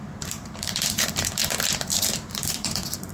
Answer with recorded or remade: remade